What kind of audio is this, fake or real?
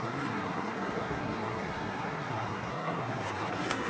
fake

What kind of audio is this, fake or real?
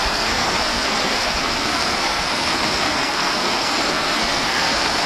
fake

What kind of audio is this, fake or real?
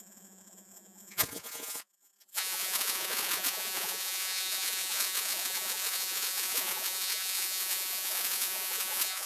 fake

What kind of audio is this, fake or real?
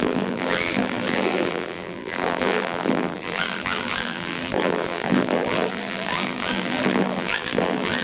fake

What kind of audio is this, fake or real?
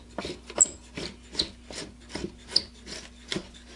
real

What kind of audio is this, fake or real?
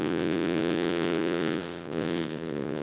fake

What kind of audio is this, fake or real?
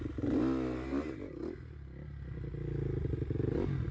real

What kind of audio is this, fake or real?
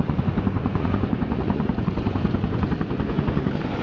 fake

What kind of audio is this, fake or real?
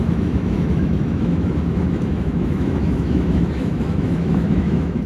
fake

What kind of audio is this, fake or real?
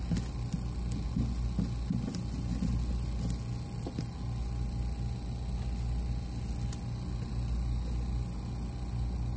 real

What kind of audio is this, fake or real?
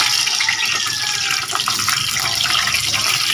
fake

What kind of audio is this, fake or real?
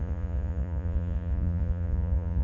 fake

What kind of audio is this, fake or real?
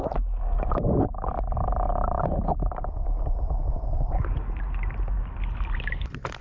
real